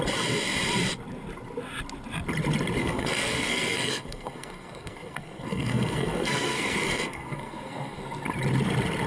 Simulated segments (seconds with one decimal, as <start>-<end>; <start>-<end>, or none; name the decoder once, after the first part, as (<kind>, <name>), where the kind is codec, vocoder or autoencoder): 2.8-8.0 (codec, SNAC)